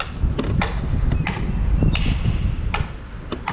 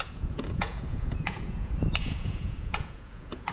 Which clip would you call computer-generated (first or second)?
second